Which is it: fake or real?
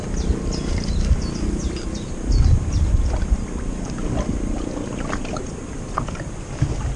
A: real